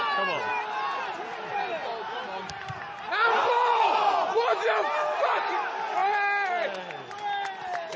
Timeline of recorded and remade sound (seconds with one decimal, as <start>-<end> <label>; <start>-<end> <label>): 0.0-8.0 recorded